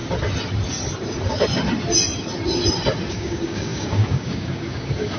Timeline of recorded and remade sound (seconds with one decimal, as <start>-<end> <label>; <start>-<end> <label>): 0.0-3.1 recorded; 3.1-5.2 remade